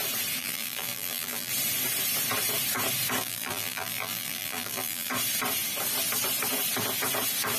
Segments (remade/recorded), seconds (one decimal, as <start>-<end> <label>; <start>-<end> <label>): 0.0-0.4 recorded; 0.4-1.5 remade; 1.5-3.2 recorded; 3.2-5.1 remade; 5.1-7.6 recorded